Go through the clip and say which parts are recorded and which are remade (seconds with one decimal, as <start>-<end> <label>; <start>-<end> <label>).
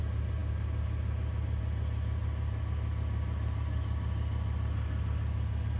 0.0-5.8 recorded